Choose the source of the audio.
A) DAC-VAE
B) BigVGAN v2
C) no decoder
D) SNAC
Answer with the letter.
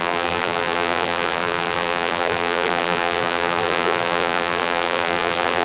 B